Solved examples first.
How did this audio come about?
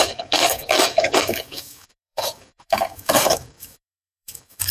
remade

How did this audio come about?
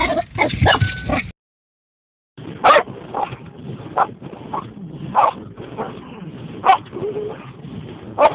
recorded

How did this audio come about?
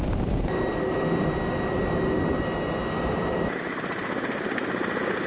recorded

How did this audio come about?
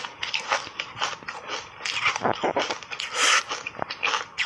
recorded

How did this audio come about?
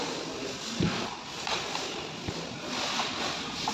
recorded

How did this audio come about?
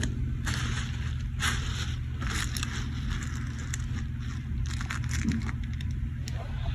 recorded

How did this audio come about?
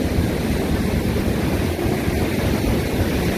recorded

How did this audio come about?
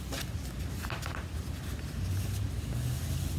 recorded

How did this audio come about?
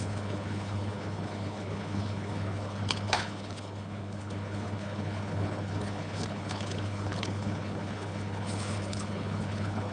remade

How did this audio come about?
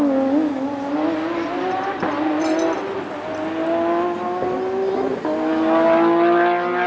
recorded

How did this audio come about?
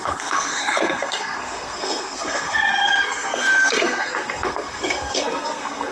remade